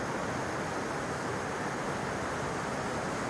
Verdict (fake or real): real